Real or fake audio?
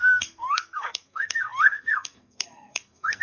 fake